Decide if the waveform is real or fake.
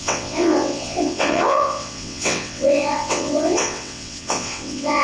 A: fake